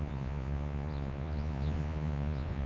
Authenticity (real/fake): fake